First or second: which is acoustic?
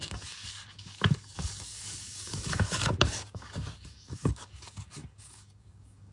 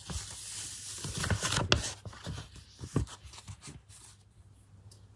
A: second